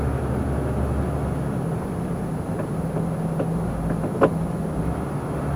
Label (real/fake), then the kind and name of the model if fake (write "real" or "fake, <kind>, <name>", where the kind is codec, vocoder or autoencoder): real